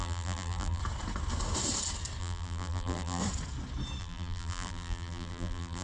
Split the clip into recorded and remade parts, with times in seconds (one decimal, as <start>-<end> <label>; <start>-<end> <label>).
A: 0.0-0.8 remade; 0.8-2.2 recorded; 2.2-3.2 remade; 3.2-4.0 recorded; 4.0-5.8 remade